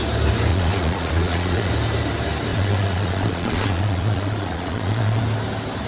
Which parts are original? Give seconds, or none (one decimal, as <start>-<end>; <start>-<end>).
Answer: 0.0-0.5; 1.7-2.5; 5.2-5.9